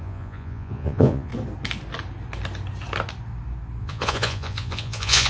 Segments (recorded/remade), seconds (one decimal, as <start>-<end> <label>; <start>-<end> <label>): 0.0-1.3 remade; 1.3-3.8 recorded; 3.8-5.3 remade